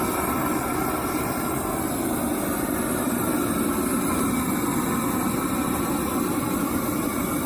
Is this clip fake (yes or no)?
no